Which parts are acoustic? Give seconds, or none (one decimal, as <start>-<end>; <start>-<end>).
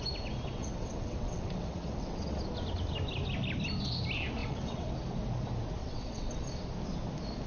0.0-0.6; 2.4-4.4; 4.9-5.8; 6.3-7.5